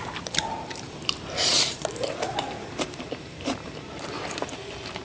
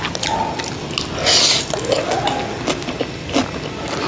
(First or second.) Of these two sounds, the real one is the second